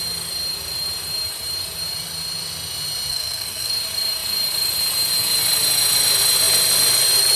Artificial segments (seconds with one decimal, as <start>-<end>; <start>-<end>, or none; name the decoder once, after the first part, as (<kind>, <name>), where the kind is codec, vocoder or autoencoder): 3.1-3.7 (codec, SNAC)